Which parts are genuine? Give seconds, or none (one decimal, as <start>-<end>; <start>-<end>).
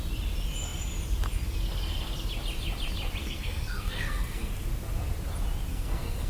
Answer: 0.0-3.2; 4.5-5.7